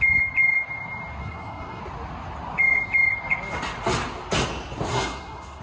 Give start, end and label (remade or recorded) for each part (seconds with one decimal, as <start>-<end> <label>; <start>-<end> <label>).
0.0-1.2 recorded; 1.2-1.8 remade; 1.8-4.9 recorded; 4.9-5.6 remade